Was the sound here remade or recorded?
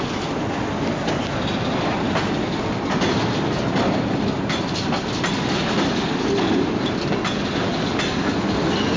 recorded